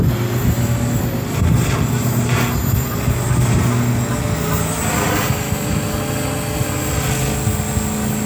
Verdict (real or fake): real